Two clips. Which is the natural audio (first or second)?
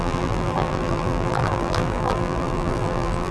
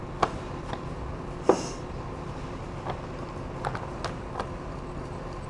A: second